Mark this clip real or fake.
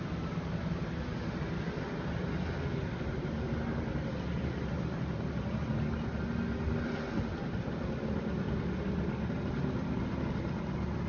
real